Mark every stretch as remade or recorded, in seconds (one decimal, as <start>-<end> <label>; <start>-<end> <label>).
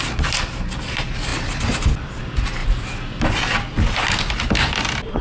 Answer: 0.0-5.2 recorded